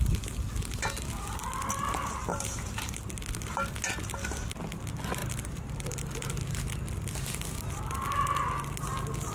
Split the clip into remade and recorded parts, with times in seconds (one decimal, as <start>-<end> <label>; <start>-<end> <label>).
0.0-2.3 recorded; 2.3-3.0 remade; 3.0-5.2 recorded; 5.2-6.3 remade; 6.3-9.3 recorded